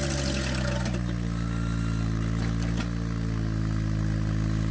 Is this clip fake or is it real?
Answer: real